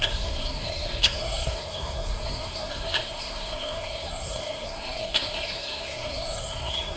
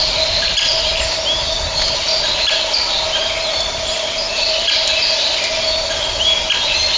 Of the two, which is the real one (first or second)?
second